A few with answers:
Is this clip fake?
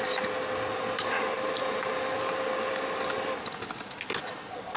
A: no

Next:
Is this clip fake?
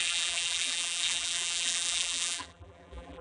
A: yes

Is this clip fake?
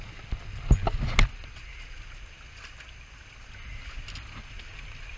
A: no